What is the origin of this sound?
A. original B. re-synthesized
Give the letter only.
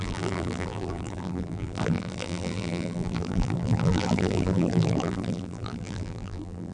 B